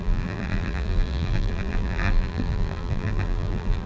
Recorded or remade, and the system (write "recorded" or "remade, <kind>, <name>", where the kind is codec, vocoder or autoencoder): remade, vocoder, BigVGAN v2